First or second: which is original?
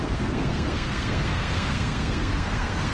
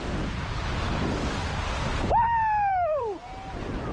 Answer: second